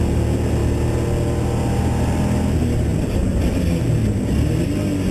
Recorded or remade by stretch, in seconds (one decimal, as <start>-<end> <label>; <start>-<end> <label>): 0.0-5.1 recorded